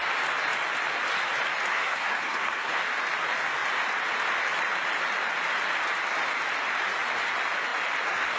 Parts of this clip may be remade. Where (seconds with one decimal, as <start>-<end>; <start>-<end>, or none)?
1.7-2.8